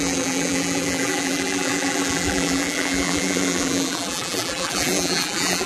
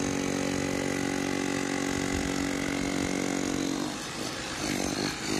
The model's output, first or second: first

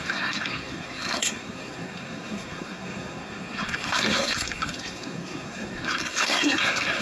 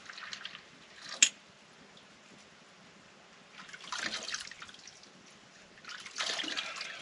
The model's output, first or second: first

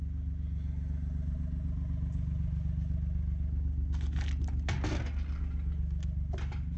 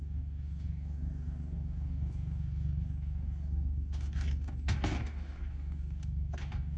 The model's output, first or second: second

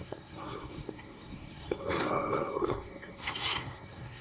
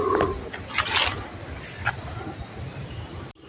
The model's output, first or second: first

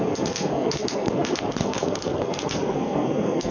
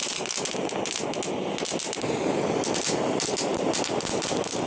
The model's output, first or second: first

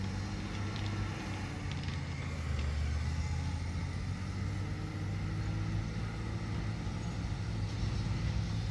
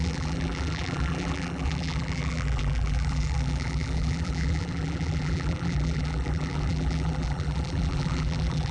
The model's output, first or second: second